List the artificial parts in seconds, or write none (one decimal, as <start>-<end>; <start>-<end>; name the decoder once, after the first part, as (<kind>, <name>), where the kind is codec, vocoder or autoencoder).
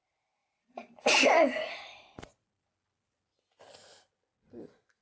0.4-3.2 (vocoder, BigVGAN v2)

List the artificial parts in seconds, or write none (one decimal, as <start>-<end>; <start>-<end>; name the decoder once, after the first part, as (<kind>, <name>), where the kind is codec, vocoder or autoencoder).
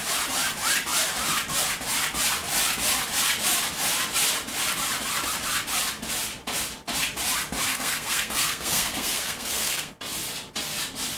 7.7-9.9 (codec, SNAC)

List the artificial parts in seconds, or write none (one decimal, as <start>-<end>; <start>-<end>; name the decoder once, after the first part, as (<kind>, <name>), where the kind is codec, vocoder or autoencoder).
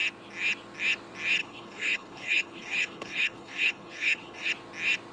1.4-4.5 (codec, HILCodec)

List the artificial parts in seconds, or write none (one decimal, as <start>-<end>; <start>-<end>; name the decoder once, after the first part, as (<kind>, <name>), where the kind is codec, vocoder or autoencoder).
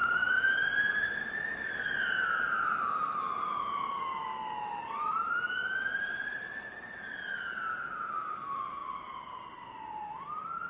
0.0-4.3 (vocoder, BigVGAN v2); 4.8-8.8; 9.9-10.7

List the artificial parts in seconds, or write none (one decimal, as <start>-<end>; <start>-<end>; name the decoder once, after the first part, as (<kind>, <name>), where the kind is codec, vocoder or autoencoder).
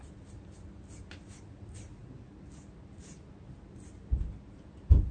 0.0-2.0 (vocoder, BigVGAN v2)